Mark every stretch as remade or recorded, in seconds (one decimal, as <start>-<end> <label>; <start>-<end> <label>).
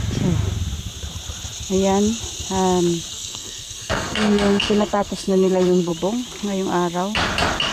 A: 0.0-3.1 recorded; 3.1-5.9 remade; 5.9-7.7 recorded